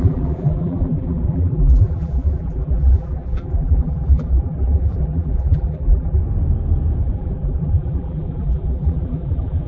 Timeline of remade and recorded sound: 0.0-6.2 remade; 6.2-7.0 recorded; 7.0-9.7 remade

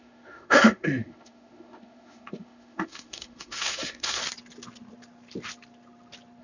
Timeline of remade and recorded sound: 0.0-4.2 remade; 4.2-6.4 recorded